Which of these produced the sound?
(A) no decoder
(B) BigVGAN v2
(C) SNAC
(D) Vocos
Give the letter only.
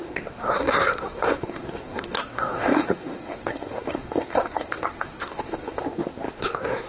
C